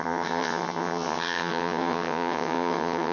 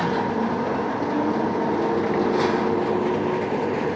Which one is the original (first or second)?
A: second